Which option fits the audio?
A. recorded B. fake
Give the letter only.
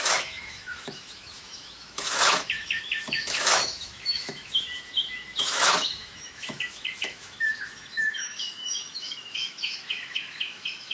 B